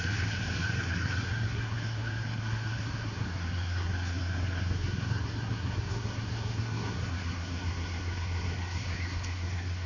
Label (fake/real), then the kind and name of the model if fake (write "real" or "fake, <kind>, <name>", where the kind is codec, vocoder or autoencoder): fake, codec, SNAC